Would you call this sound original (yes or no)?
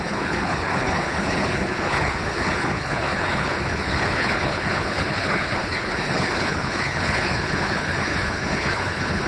no